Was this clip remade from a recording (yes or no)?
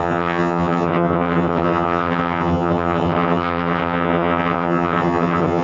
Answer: yes